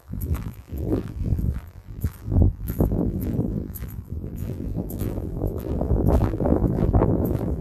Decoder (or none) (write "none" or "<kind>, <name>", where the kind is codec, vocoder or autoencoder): vocoder, BigVGAN v2